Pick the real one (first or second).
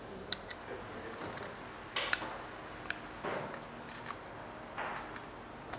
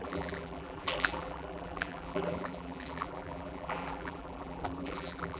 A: first